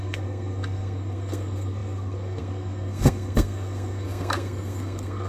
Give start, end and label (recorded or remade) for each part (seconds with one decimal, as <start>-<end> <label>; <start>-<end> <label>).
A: 0.0-5.3 remade